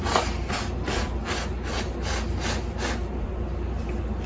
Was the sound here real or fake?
real